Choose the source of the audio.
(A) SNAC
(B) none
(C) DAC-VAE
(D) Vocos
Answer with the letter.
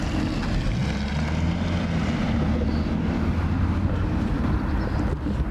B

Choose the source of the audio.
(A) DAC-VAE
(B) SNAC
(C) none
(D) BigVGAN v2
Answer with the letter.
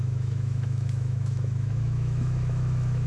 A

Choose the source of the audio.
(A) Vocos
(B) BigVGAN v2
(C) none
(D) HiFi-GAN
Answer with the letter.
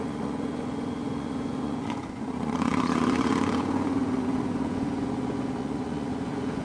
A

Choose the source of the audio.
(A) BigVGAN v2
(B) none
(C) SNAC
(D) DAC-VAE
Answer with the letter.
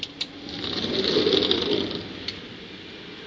B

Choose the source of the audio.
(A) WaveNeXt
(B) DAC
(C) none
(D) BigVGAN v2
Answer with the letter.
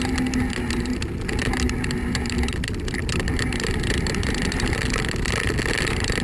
C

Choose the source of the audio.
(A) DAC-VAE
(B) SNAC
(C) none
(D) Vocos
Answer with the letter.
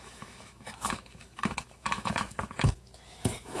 A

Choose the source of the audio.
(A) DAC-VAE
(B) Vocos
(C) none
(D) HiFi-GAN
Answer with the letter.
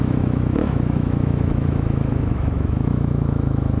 A